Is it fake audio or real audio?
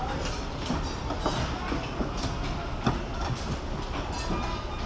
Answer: real